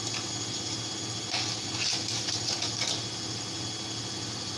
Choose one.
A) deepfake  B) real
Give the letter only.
B